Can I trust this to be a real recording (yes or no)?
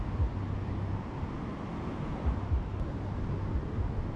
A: yes